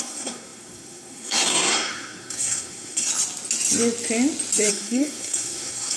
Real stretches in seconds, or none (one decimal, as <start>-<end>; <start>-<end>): 3.1-4.7